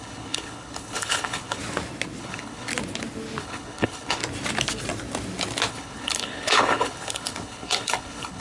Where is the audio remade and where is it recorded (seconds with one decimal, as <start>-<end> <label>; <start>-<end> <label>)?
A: 0.0-1.6 remade; 1.6-2.2 recorded; 2.2-2.7 remade; 2.7-3.4 recorded; 3.4-4.2 remade; 4.2-5.7 recorded; 5.7-8.4 remade